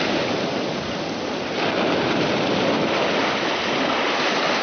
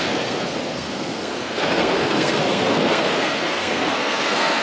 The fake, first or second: second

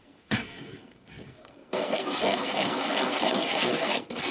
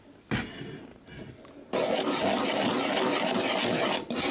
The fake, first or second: first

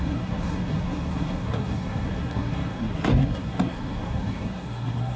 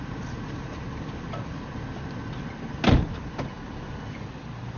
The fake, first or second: first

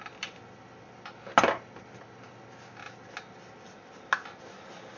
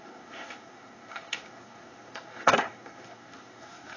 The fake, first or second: second